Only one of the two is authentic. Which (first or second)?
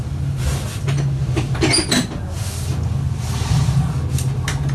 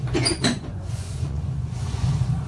first